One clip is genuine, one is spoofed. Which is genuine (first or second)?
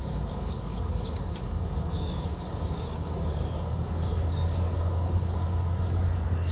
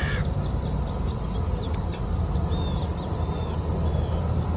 second